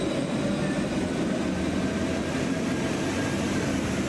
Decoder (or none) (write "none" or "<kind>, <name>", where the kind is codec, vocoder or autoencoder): none